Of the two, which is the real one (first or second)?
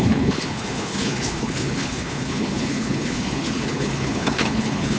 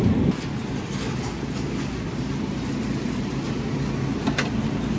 second